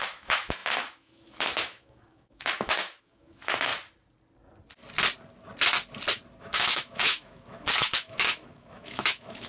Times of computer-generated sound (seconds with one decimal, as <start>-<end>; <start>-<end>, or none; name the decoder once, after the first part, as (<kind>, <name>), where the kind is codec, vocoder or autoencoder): 0.0-3.7 (autoencoder, DAC-VAE); 6.4-9.5